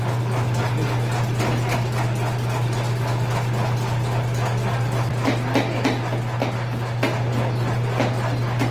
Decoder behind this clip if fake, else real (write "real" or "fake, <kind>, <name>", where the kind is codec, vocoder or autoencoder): real